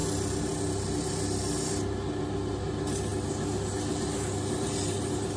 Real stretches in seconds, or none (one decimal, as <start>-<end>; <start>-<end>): 0.0-5.4

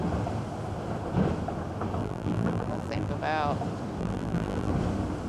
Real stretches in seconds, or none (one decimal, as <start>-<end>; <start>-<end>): 0.0-2.0; 3.1-4.0; 4.7-5.3

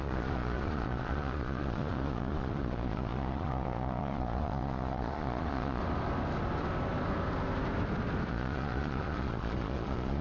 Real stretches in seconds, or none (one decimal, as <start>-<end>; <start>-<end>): 5.8-8.3

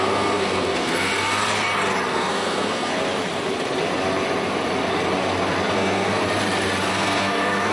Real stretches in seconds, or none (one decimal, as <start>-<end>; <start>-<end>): 1.1-2.1; 2.9-5.7; 6.2-6.9

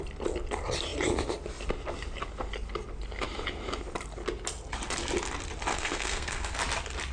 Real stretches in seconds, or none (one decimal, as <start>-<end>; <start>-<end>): 0.0-5.7; 6.5-7.1

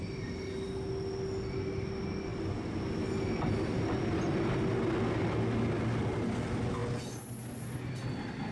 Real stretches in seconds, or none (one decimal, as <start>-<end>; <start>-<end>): 0.0-8.5

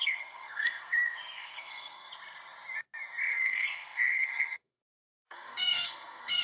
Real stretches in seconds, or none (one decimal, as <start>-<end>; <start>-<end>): 2.1-3.3

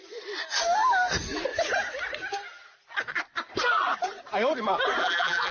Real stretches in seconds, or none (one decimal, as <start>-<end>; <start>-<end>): 0.0-5.0